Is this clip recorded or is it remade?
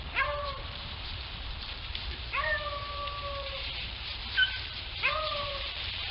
remade